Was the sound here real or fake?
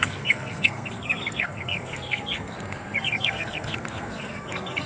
fake